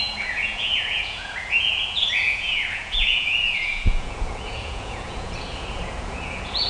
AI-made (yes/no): yes